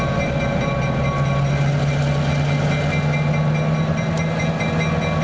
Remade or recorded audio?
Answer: recorded